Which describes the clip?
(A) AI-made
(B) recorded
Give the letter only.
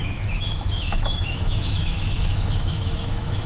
A